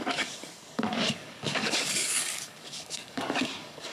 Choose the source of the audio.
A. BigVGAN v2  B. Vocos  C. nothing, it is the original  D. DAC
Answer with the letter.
D